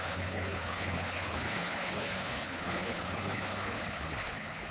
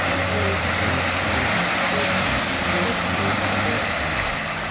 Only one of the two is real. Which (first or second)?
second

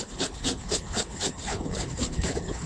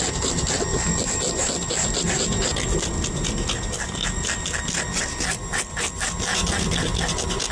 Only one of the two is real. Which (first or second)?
second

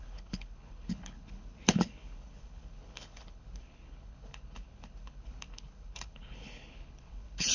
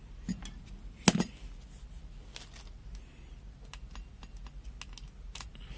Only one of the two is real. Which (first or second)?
second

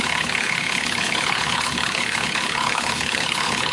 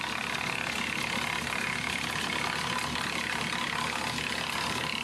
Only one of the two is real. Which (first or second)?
second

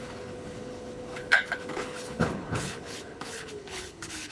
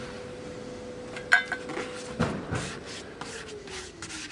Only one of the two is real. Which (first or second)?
second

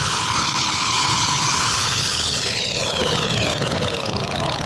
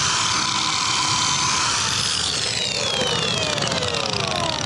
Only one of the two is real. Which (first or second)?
second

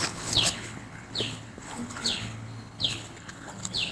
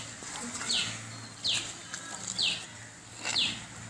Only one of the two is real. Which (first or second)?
second